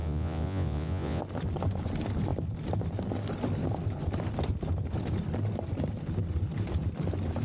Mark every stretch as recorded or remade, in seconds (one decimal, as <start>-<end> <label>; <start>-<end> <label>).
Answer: 0.0-1.2 remade; 1.2-7.4 recorded